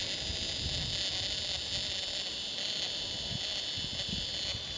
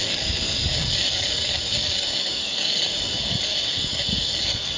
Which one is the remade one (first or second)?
second